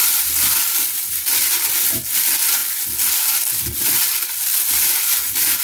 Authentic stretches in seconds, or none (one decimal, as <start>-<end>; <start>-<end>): 1.1-5.6